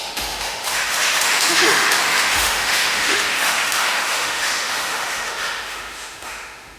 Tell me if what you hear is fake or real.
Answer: fake